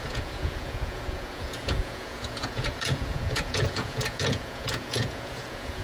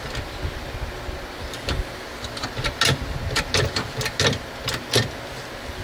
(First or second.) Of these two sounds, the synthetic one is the first